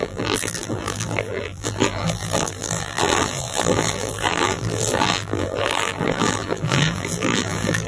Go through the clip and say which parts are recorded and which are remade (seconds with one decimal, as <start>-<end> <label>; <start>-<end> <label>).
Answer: 0.0-7.9 remade